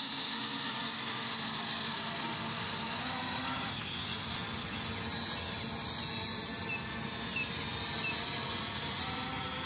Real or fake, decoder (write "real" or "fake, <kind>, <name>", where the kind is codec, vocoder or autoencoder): real